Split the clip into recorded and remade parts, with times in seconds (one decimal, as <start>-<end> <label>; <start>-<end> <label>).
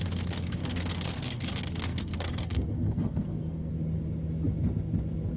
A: 0.0-0.6 recorded; 0.6-1.5 remade; 1.5-1.9 recorded; 1.9-3.7 remade; 3.7-5.4 recorded